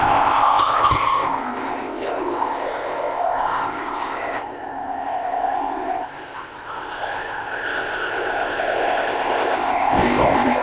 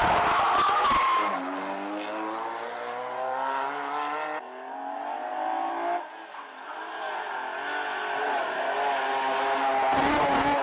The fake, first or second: first